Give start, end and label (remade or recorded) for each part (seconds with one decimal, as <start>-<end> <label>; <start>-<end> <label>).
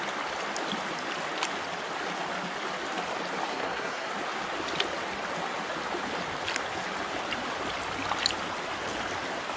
0.0-3.5 recorded; 3.5-4.1 remade; 4.1-9.6 recorded